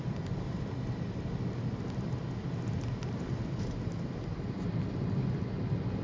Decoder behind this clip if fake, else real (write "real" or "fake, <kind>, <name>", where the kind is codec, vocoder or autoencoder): real